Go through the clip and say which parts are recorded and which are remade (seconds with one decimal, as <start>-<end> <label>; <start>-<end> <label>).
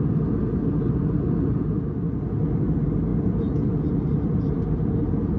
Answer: 0.0-5.4 recorded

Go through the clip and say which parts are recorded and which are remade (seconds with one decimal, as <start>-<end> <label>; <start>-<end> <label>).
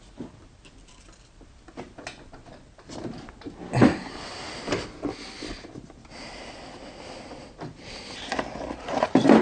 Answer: 0.0-9.4 recorded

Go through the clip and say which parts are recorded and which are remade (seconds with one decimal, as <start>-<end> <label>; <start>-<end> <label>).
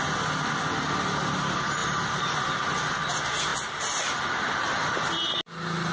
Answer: 0.0-5.9 recorded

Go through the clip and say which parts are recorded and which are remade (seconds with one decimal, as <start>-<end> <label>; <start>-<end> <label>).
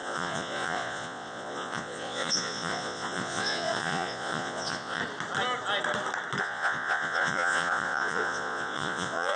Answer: 0.0-5.0 remade; 5.0-6.4 recorded; 6.4-9.4 remade